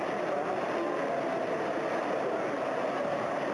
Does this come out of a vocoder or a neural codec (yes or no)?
yes